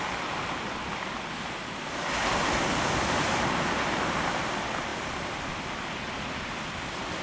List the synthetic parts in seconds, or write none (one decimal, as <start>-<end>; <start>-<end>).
none